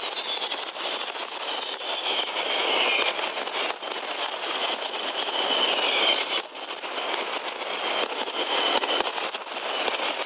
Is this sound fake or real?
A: real